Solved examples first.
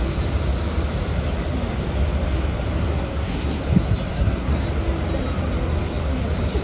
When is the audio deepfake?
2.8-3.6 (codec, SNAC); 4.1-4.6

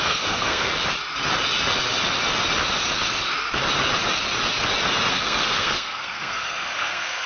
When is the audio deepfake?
0.0-0.7 (codec, SNAC); 5.1-7.3

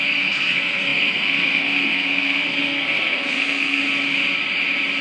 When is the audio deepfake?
0.0-3.8 (codec, SNAC)

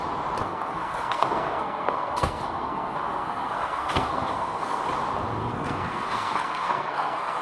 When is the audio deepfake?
0.4-4.8 (codec, SNAC); 5.4-7.4

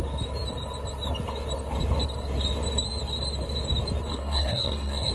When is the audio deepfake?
4.1-5.1 (codec, SNAC)

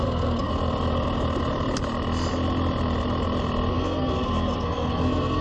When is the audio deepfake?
0.0-0.5 (codec, SNAC); 3.7-5.4